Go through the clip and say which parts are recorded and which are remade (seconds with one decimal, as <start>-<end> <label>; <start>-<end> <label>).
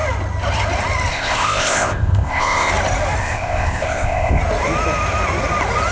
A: 0.0-1.1 recorded; 1.1-2.7 remade; 2.7-3.2 recorded; 3.2-4.4 remade; 4.4-5.9 recorded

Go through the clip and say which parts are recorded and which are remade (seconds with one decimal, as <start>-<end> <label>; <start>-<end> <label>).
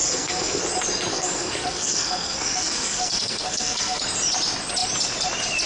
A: 0.0-0.6 remade; 0.6-1.1 recorded; 1.1-4.0 remade; 4.0-5.7 recorded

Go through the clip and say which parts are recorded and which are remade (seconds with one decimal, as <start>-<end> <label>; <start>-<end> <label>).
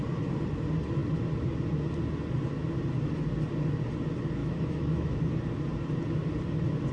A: 0.0-4.4 recorded; 4.4-5.2 remade; 5.2-6.9 recorded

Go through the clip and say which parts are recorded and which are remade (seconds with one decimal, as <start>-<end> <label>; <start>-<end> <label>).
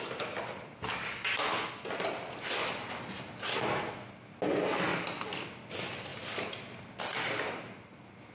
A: 0.0-8.3 recorded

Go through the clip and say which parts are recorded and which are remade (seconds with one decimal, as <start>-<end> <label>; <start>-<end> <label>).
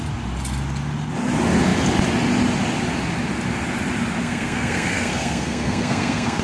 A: 0.0-4.2 recorded; 4.2-6.4 remade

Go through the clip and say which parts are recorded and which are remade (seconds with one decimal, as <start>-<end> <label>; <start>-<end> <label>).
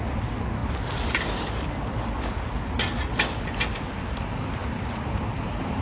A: 0.0-5.8 recorded